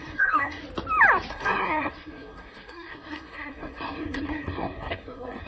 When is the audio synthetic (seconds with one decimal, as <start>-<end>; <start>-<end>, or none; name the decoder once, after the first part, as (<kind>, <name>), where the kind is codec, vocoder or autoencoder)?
0.0-0.6 (codec, SNAC); 1.3-5.5